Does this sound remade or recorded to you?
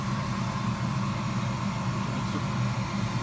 recorded